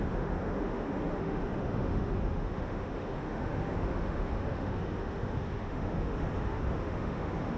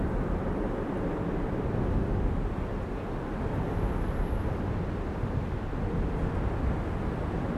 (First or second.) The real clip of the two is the second